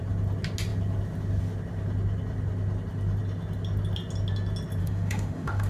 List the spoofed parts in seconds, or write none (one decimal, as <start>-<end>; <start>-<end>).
4.8-5.7